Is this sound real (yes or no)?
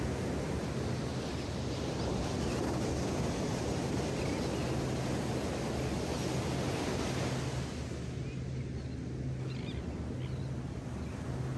yes